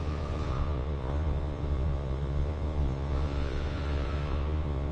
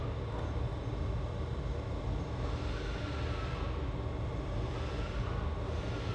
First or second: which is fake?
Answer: first